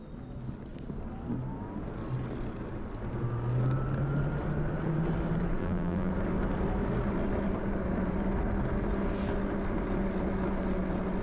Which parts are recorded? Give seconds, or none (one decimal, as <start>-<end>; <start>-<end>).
0.0-5.6; 6.1-11.2